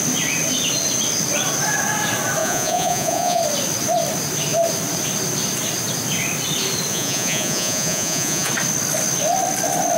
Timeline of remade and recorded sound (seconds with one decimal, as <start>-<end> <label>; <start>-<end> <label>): 0.0-2.4 recorded; 2.4-3.4 remade; 3.4-6.9 recorded; 6.9-8.5 remade; 8.5-10.0 recorded